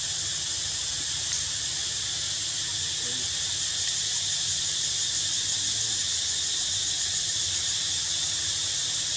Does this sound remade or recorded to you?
recorded